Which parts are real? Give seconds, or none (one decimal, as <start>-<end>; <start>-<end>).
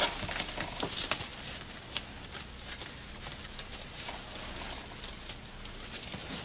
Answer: 0.0-6.4